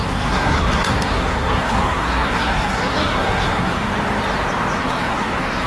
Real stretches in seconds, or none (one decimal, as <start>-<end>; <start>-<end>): 3.9-4.8